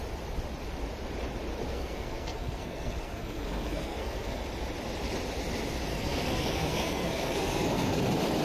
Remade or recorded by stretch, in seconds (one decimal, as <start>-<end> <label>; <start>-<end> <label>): 0.0-1.7 recorded; 1.7-4.4 remade; 4.4-5.9 recorded; 5.9-8.0 remade; 8.0-8.4 recorded